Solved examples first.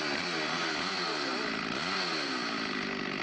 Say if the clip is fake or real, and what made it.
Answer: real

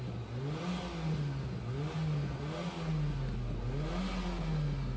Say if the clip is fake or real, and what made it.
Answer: real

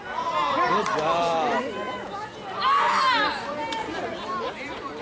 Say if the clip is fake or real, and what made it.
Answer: real